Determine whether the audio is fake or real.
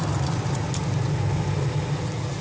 real